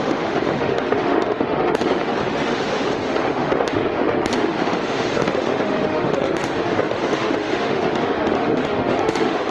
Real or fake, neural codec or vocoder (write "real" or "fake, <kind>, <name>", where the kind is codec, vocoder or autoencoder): fake, autoencoder, DAC-VAE